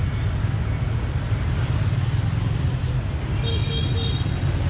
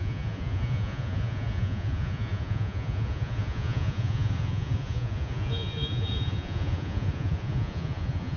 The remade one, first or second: second